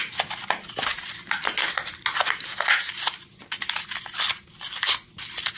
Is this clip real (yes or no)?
yes